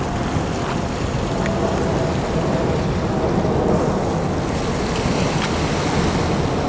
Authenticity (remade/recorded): recorded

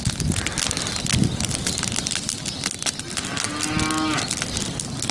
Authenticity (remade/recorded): recorded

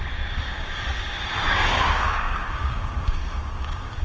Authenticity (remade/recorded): remade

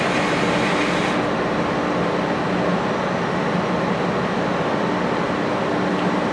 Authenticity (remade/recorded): recorded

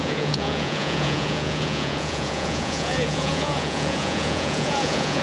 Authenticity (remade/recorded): remade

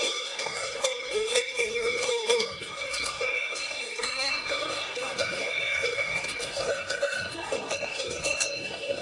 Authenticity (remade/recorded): remade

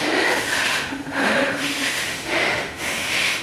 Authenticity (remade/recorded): remade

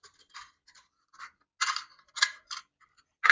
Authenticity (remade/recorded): recorded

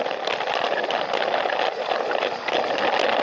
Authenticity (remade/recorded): recorded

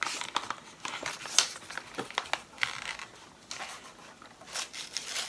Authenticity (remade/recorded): recorded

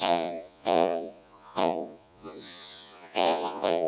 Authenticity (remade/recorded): remade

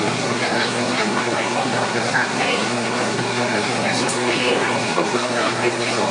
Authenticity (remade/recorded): remade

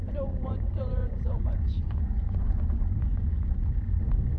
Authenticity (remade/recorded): remade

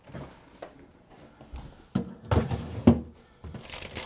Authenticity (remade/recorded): recorded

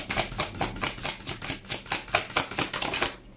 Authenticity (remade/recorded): recorded